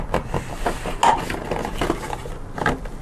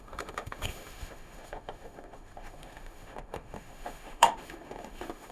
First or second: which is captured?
first